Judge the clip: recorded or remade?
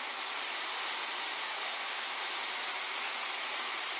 remade